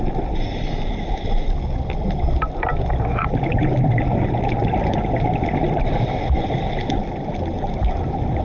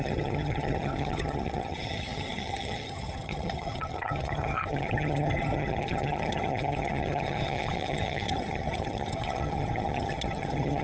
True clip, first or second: first